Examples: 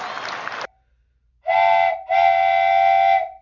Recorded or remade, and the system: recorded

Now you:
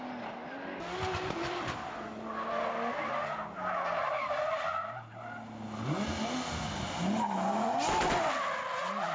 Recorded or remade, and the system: recorded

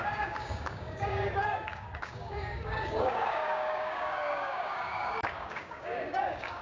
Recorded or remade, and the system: remade, codec, DAC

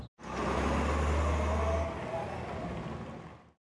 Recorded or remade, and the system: recorded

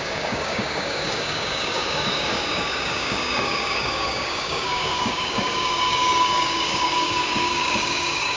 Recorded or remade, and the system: remade, codec, DAC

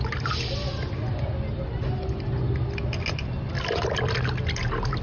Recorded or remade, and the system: recorded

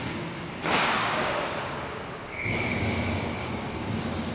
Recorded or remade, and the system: remade, codec, DAC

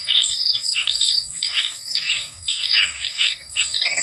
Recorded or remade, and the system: remade, codec, DAC